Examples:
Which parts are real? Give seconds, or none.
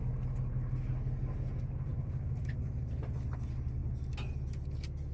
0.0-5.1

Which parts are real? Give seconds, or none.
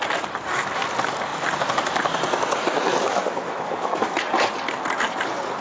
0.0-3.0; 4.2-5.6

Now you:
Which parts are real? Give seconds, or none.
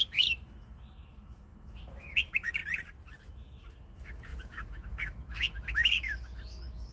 2.6-3.3